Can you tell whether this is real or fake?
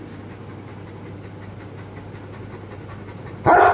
real